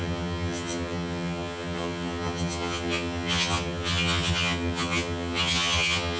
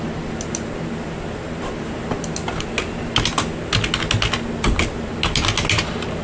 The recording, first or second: second